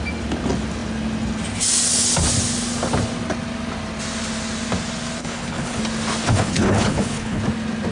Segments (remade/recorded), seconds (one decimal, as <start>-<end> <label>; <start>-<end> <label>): 0.0-5.2 recorded; 5.2-5.8 remade; 5.8-6.2 recorded; 6.2-7.4 remade; 7.4-7.9 recorded